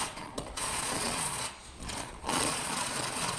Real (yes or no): no